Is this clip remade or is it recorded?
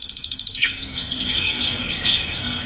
remade